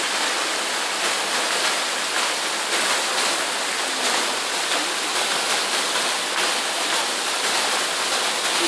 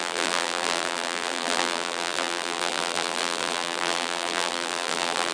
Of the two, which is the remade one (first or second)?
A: second